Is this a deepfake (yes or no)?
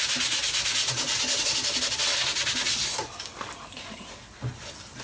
no